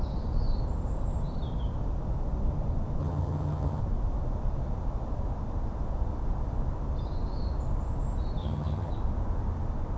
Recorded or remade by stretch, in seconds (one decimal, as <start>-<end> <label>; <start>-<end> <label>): 0.0-3.0 recorded; 3.0-3.8 remade; 3.8-8.4 recorded; 8.4-8.9 remade; 8.9-10.0 recorded